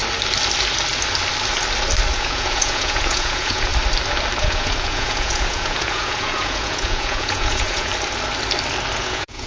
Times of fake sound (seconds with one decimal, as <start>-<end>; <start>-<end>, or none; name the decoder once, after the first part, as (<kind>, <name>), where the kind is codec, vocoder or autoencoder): 2.1-3.7 (vocoder, Vocos); 4.4-7.9; 9.0-9.5